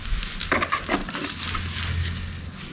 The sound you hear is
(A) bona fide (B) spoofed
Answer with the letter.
A